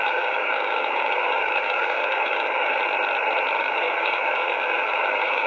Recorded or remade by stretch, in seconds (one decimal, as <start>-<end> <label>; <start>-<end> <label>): 0.0-2.8 remade; 2.8-3.6 recorded; 3.6-5.5 remade